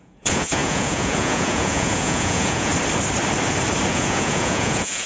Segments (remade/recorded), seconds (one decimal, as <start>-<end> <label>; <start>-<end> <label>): 0.0-2.7 remade; 2.7-3.9 recorded; 3.9-5.1 remade